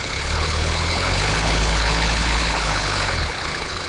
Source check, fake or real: fake